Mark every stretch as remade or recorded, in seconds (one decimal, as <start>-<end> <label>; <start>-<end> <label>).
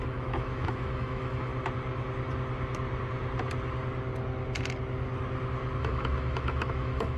0.0-1.5 remade; 1.5-5.8 recorded; 5.8-7.2 remade